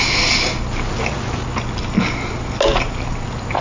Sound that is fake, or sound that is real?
real